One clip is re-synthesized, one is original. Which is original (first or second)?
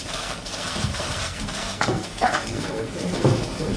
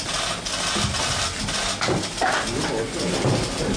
second